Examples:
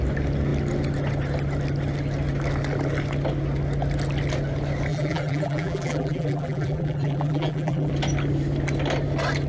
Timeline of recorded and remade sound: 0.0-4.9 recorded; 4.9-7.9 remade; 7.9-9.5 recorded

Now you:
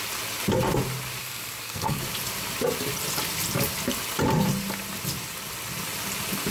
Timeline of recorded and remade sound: 0.0-1.2 recorded; 1.2-2.0 remade; 2.0-6.5 recorded

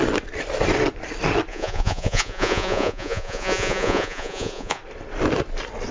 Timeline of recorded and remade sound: 0.0-1.5 recorded; 1.5-4.8 remade; 4.8-5.9 recorded

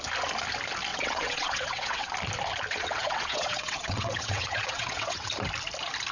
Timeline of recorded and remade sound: 0.0-0.9 recorded; 0.9-2.1 remade; 2.1-2.7 recorded; 2.7-5.3 remade; 5.3-6.1 recorded

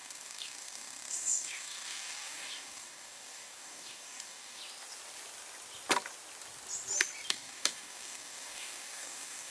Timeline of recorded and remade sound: 0.0-4.6 remade; 4.6-7.3 recorded; 7.3-9.5 remade